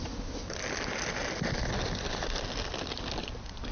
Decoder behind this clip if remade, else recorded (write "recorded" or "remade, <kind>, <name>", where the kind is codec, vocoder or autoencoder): recorded